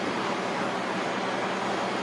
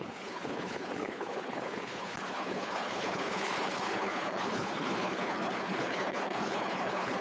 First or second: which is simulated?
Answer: second